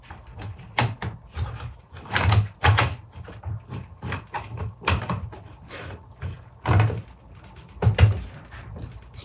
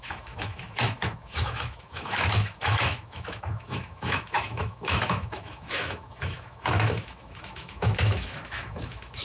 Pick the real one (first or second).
first